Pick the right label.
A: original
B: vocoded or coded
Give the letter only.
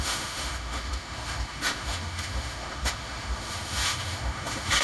B